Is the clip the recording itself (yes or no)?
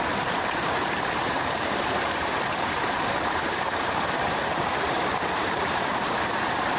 no